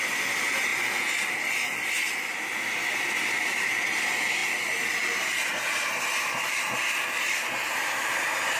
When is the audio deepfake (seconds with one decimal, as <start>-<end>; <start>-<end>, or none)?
none